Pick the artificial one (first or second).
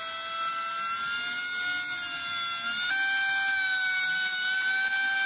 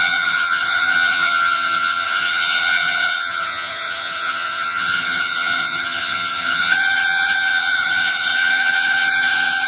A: second